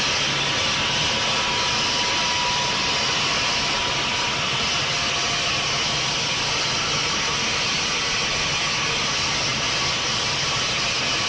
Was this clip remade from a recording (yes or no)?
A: no